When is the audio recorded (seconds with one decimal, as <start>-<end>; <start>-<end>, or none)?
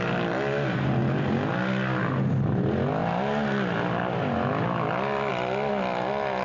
0.0-6.4